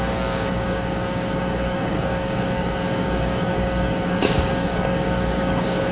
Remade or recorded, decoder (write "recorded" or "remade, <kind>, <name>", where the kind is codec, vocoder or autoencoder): remade, codec, DAC